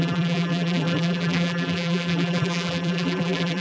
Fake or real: fake